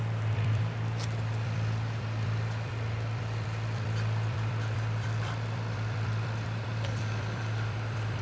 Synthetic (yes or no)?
yes